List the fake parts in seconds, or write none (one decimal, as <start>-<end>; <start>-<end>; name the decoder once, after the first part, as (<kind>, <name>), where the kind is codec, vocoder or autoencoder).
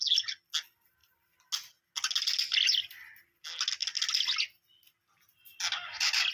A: none